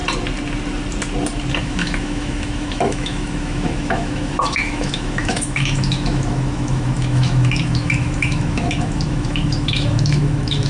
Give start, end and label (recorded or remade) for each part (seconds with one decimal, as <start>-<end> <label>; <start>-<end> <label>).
0.0-1.6 recorded; 1.6-10.7 remade